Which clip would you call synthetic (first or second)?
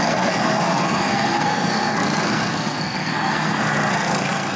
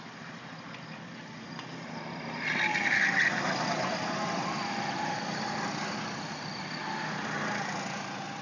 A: first